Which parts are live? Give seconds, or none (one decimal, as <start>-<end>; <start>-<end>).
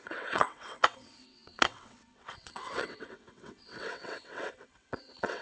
none